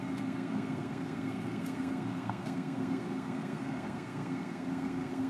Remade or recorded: remade